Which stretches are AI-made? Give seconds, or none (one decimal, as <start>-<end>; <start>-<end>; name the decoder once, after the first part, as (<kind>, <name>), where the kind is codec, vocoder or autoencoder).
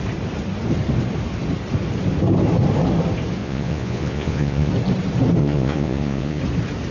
3.4-4.7 (vocoder, Vocos); 5.4-6.4